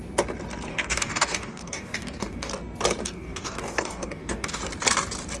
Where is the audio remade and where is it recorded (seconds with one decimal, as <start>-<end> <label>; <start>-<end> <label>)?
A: 0.0-0.7 recorded; 0.7-2.5 remade; 2.5-3.0 recorded; 3.0-4.6 remade; 4.6-5.4 recorded